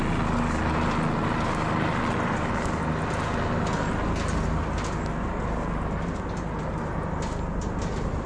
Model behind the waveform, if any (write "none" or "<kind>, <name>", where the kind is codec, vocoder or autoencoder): none